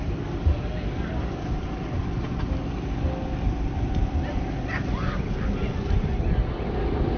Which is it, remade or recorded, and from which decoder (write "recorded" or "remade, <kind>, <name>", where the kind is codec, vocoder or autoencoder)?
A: recorded